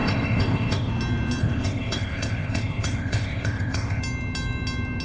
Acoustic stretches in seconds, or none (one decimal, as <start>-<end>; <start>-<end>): 0.9-1.4; 4.0-5.0